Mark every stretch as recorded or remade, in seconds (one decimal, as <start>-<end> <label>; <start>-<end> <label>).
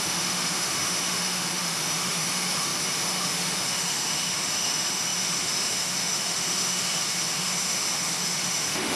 0.0-9.0 remade